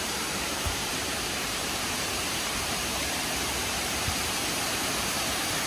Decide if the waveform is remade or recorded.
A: remade